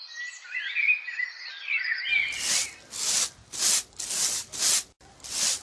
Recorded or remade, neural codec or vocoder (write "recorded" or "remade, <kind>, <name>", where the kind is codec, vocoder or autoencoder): recorded